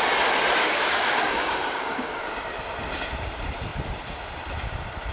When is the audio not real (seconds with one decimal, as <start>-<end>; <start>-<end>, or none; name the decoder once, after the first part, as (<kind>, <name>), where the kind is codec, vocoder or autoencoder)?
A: 0.6-2.2 (codec, DAC)